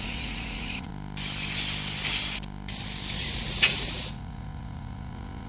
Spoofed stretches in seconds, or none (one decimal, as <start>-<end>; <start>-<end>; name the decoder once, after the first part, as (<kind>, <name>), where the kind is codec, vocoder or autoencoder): 0.0-0.9 (vocoder, Vocos); 3.2-5.5